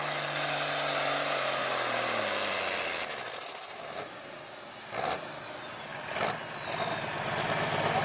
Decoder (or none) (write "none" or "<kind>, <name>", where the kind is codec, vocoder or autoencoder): none